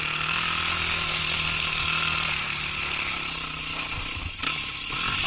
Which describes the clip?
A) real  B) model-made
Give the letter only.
A